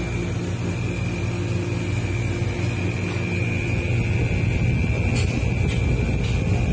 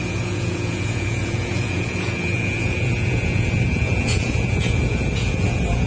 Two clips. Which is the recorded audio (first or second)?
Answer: first